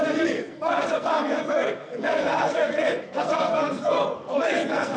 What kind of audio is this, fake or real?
fake